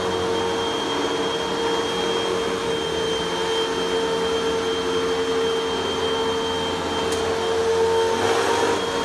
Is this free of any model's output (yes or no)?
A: yes